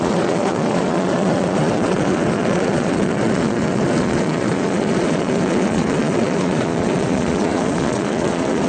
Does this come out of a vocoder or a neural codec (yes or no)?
yes